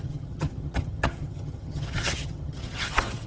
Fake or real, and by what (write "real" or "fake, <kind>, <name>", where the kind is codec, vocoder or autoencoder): fake, vocoder, HiFi-GAN